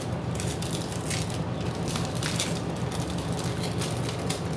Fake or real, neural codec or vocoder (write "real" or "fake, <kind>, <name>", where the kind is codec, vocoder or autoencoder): real